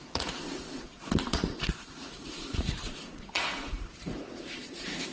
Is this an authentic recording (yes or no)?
no